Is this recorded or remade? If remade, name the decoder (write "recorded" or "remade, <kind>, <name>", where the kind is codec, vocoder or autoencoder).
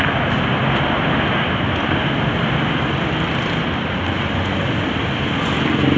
recorded